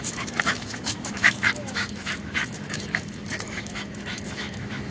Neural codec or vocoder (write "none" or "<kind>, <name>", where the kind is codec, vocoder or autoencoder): autoencoder, DAC-VAE